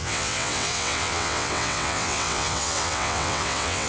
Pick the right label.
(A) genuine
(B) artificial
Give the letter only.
B